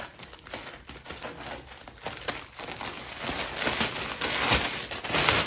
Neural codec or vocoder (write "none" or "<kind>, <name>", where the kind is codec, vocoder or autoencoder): none